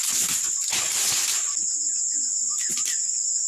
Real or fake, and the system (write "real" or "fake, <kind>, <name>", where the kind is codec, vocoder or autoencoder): real